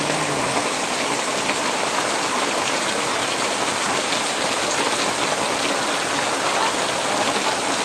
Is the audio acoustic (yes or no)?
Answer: yes